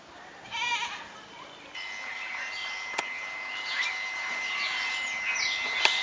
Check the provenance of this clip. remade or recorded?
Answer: recorded